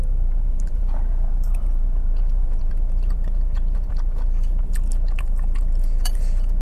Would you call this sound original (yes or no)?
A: no